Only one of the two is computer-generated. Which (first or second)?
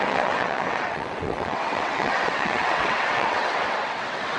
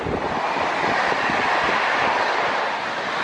first